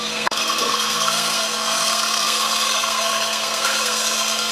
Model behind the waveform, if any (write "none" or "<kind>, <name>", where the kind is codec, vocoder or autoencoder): codec, SNAC